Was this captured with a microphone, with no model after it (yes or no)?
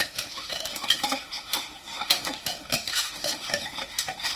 no